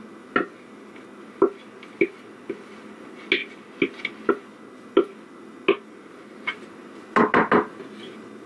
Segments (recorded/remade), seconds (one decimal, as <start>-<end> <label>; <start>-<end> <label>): 0.0-8.5 recorded